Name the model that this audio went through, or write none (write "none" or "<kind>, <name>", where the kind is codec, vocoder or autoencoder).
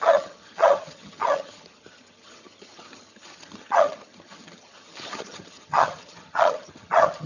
vocoder, HiFi-GAN